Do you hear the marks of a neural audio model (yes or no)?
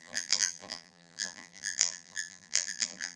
yes